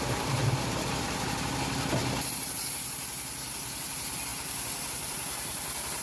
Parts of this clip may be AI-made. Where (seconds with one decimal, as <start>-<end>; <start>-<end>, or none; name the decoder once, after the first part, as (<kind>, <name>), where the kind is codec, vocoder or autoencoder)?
0.0-0.4 (vocoder, BigVGAN v2); 1.0-4.3; 4.9-6.0